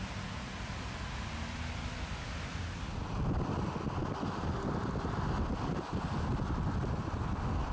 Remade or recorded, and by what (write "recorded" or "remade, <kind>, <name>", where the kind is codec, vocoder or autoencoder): recorded